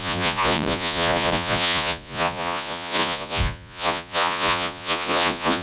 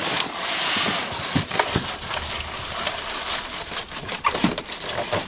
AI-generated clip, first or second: first